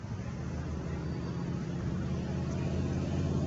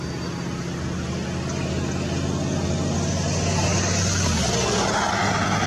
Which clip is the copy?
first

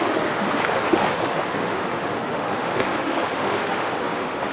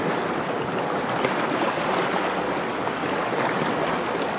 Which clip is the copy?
first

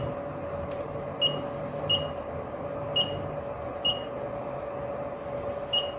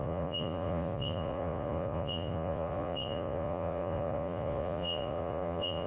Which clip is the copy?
second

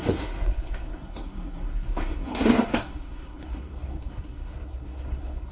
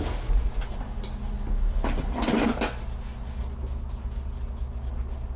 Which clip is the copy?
first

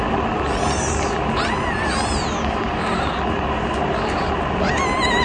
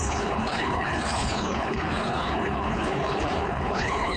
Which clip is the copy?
second